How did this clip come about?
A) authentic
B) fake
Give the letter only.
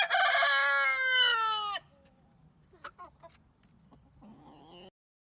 A